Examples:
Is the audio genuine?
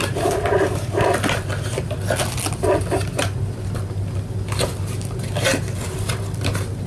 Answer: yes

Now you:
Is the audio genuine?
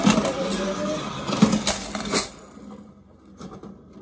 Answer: yes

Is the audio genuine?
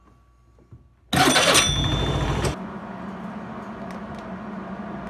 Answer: yes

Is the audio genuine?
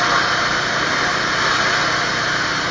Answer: yes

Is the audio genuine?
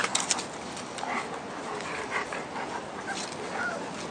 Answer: yes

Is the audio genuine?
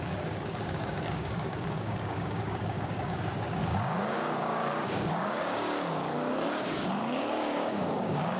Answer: no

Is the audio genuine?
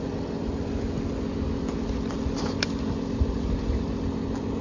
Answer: yes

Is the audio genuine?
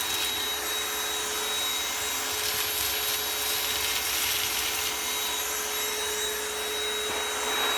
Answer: yes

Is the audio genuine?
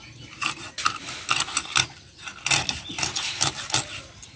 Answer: yes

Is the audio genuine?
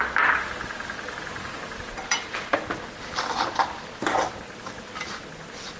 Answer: yes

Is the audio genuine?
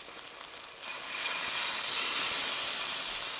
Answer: yes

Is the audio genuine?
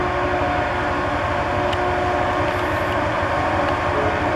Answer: yes